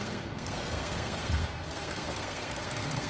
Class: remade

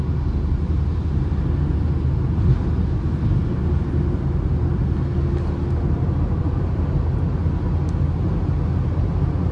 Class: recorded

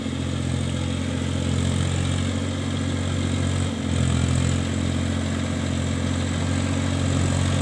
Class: recorded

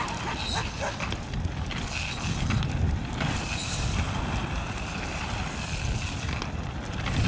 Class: recorded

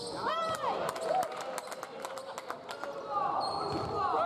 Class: recorded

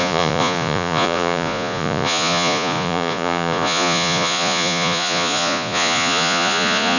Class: remade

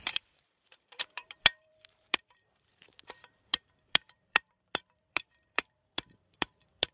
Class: remade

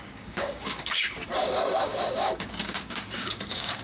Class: remade